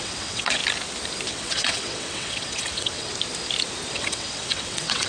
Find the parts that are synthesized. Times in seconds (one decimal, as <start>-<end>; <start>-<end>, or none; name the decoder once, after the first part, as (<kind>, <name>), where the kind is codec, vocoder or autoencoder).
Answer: 0.0-0.6 (vocoder, WaveNeXt); 1.3-3.1; 3.9-5.1